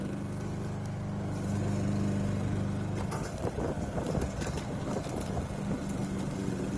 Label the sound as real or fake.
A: real